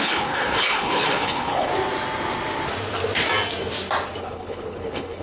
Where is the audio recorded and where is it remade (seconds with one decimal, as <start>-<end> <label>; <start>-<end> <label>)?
0.0-1.7 remade; 1.7-4.2 recorded; 4.2-5.2 remade